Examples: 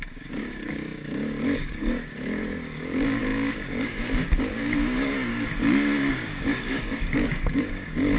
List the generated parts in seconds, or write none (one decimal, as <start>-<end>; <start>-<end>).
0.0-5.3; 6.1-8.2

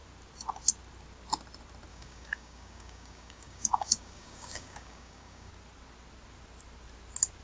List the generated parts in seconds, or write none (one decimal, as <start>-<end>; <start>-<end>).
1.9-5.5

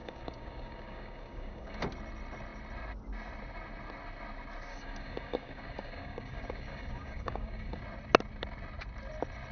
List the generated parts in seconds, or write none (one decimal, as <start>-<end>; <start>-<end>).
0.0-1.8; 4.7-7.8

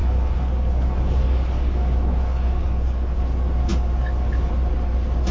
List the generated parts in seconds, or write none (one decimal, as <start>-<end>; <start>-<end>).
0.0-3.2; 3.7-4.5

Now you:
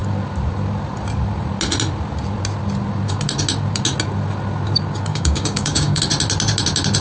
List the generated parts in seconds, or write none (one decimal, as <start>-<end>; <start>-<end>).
5.1-6.0